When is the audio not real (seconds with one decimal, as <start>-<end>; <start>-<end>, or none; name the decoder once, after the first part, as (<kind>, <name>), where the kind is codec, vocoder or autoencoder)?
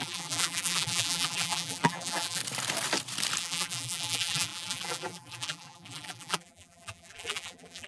0.0-2.4 (vocoder, BigVGAN v2); 3.4-7.9